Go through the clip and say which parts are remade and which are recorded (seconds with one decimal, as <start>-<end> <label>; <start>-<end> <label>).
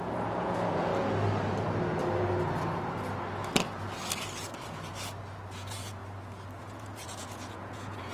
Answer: 0.0-0.9 remade; 0.9-5.5 recorded; 5.5-6.0 remade; 6.0-6.6 recorded; 6.6-8.1 remade